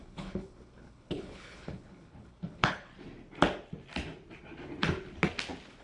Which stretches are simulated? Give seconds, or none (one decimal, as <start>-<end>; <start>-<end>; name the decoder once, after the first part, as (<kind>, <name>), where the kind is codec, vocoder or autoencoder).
0.0-2.9 (codec, HILCodec)